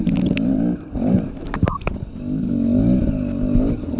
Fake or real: real